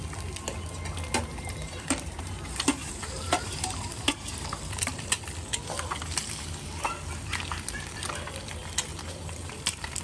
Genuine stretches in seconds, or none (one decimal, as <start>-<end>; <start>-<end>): 0.0-1.3; 5.1-8.9